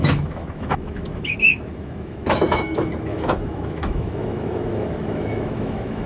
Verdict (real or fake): fake